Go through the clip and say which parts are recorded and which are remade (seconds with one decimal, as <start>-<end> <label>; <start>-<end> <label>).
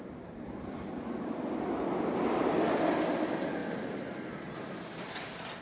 0.0-5.6 recorded